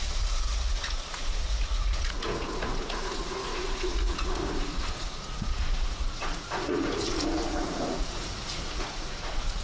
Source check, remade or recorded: remade